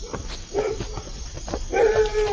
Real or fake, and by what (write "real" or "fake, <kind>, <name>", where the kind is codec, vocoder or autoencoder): real